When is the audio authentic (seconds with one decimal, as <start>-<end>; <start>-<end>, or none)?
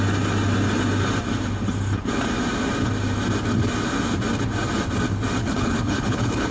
0.0-5.4